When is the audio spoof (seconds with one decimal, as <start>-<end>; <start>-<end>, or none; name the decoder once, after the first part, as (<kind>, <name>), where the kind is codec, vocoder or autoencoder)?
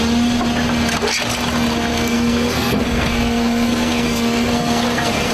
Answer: 1.9-5.3 (codec, SNAC)